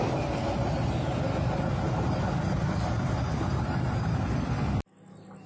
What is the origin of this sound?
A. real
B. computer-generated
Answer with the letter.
A